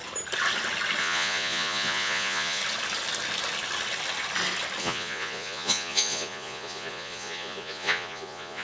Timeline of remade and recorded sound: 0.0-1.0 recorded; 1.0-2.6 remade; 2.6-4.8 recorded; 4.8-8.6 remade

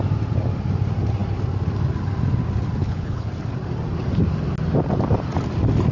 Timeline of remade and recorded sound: 0.0-2.8 recorded; 2.8-3.3 remade; 3.3-5.9 recorded

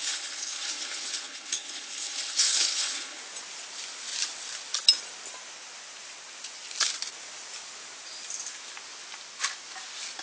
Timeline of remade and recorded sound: 0.0-3.2 remade; 3.2-10.2 recorded

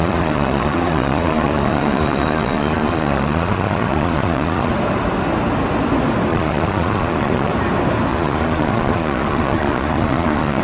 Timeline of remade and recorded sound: 0.0-4.7 remade; 4.7-6.3 recorded; 6.3-7.5 remade; 7.5-8.1 recorded; 8.1-10.6 remade

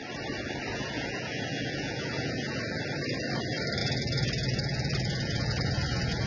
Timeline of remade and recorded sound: 0.0-0.7 recorded; 0.7-2.6 remade; 2.6-3.8 recorded; 3.8-6.3 remade

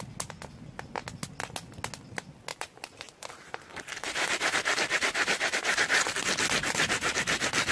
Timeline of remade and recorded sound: 0.0-2.5 recorded; 2.5-3.3 remade; 3.3-3.7 recorded; 3.7-6.2 remade; 6.2-7.7 recorded

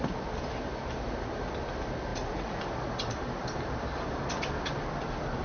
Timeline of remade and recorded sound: 0.0-2.1 recorded; 2.1-2.6 remade; 2.6-5.4 recorded